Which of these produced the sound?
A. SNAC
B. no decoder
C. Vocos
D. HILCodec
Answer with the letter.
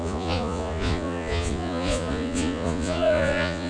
C